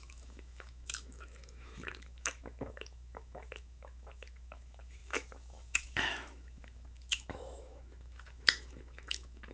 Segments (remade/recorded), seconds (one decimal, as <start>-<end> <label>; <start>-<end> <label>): 0.0-9.5 remade